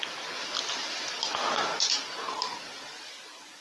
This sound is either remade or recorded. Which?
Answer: recorded